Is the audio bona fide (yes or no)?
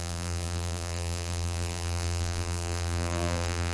no